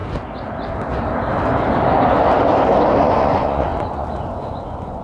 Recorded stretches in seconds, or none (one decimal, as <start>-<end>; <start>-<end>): 0.0-3.0